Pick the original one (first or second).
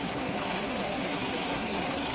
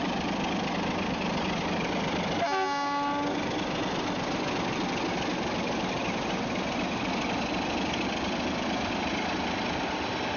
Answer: second